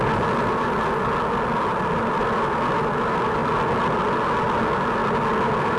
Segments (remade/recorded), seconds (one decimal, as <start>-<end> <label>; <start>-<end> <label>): 0.0-5.8 recorded

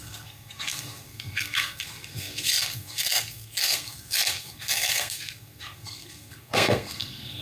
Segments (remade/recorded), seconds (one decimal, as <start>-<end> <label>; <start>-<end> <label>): 0.0-7.4 remade

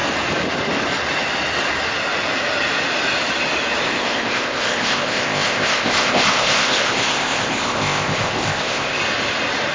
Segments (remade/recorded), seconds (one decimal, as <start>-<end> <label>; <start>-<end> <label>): 0.0-3.8 recorded; 3.8-9.0 remade; 9.0-9.7 recorded

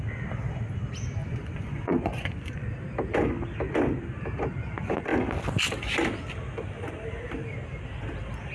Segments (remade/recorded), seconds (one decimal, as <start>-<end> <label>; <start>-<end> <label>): 0.0-1.2 recorded; 1.2-2.7 remade; 2.7-8.5 recorded